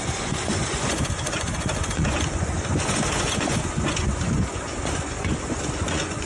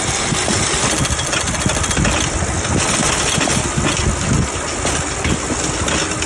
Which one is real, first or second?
second